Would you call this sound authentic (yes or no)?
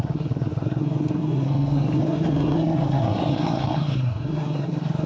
no